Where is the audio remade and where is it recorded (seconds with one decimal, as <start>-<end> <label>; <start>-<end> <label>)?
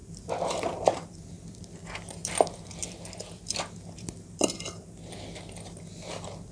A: 0.0-1.6 remade; 1.6-2.8 recorded; 2.8-5.1 remade; 5.1-6.5 recorded